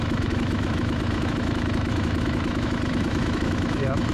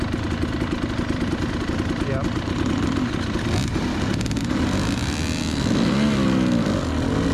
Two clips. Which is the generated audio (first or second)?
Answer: first